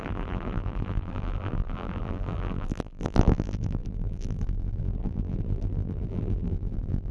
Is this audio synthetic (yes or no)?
yes